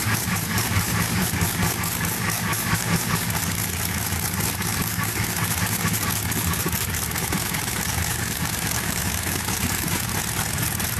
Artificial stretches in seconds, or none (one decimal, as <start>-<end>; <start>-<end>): 0.0-10.1